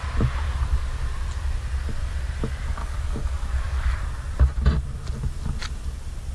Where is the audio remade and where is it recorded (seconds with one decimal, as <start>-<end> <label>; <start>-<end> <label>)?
0.0-2.8 recorded; 2.8-3.9 remade; 3.9-6.3 recorded